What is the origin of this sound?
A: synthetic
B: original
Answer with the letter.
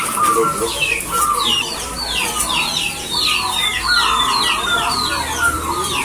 B